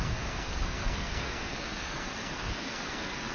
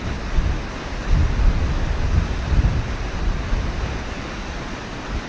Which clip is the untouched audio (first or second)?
second